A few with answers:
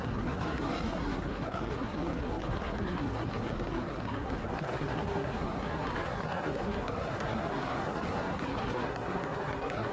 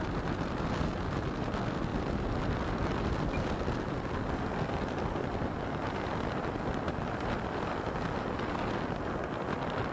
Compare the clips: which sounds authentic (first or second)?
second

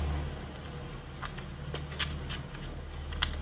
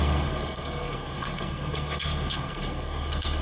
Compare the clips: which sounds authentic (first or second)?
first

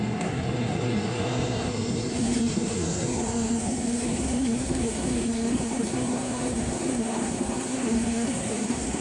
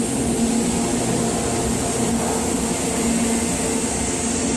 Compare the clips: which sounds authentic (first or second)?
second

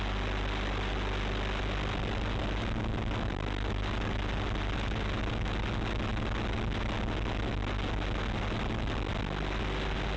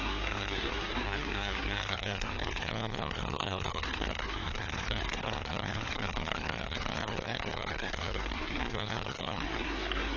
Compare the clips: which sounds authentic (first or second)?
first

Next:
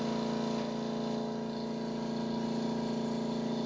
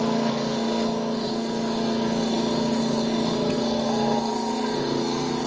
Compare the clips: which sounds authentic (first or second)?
first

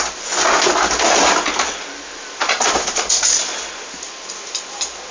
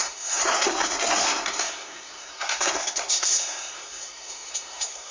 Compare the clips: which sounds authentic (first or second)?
first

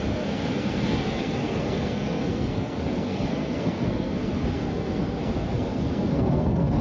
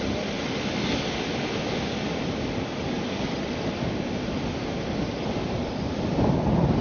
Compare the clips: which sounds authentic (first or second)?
second